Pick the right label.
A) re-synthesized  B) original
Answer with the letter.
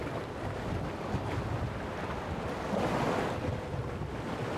B